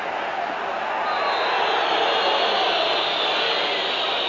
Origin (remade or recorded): recorded